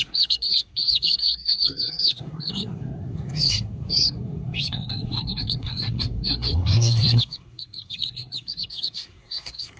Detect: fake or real fake